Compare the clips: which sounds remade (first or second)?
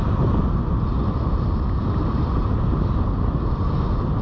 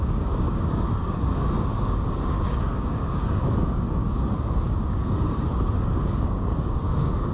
second